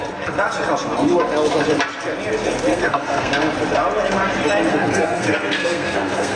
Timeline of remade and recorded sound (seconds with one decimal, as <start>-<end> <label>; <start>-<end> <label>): 0.0-2.7 recorded; 2.7-3.3 remade; 3.3-4.7 recorded; 4.7-6.4 remade